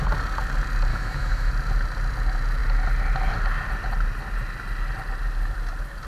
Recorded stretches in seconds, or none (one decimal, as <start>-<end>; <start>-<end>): 0.0-0.9; 1.5-6.1